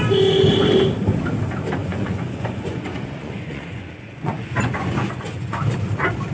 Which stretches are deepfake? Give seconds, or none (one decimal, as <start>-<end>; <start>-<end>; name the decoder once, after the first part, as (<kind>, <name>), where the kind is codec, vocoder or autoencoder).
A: 1.8-5.6 (vocoder, Vocos)